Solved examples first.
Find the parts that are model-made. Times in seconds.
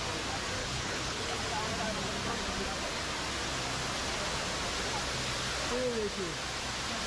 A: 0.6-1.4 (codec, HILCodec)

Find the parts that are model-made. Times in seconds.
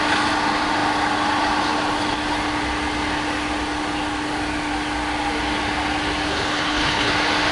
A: 6.3-7.1 (codec, HILCodec)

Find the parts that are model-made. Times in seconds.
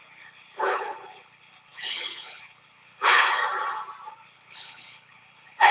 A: 0.0-3.4 (codec, HILCodec); 4.1-5.7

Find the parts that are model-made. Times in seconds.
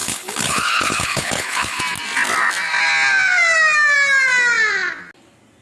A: 0.0-1.8 (codec, HILCodec)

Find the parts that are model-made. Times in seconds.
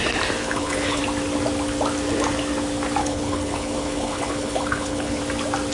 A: 0.4-1.0 (codec, HILCodec); 3.0-5.2